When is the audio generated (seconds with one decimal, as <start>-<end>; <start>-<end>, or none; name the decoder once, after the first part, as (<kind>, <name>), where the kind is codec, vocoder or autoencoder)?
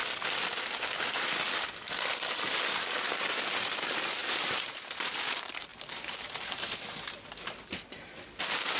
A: 4.2-5.1 (vocoder, BigVGAN v2); 5.7-6.6